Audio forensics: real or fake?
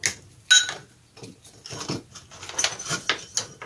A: real